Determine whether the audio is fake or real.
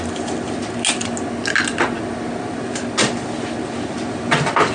real